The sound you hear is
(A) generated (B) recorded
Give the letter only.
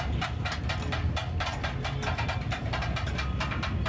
B